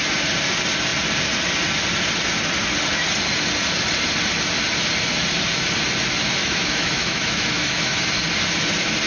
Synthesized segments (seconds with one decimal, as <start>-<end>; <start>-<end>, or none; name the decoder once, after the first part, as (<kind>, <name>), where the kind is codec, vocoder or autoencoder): 6.4-8.1 (autoencoder, DAC-VAE)